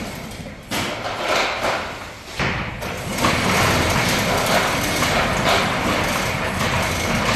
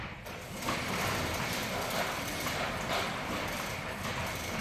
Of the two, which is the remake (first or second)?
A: second